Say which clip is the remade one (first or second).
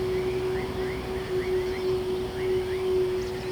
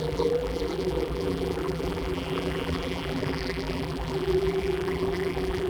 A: second